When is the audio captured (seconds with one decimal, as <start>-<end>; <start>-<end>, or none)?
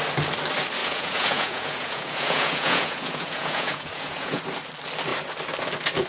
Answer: 0.0-0.8; 4.4-6.1